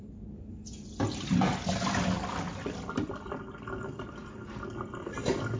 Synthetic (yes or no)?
no